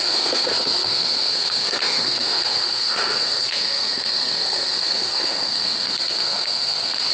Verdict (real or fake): fake